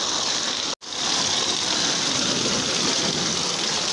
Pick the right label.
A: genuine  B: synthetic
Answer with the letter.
A